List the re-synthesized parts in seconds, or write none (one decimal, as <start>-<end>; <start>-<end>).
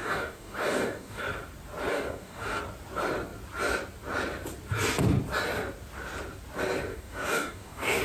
0.0-1.2; 1.9-2.6; 6.9-8.0